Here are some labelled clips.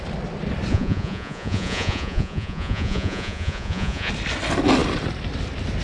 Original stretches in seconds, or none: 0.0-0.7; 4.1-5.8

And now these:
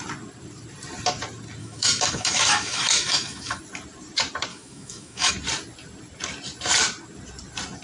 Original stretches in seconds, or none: 0.0-1.6; 3.6-4.5; 5.3-7.8

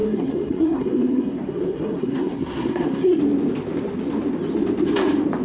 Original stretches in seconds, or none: 3.2-5.4

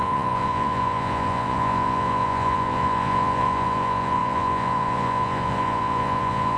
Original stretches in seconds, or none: none